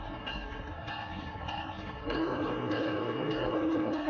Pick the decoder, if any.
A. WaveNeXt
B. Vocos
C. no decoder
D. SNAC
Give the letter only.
D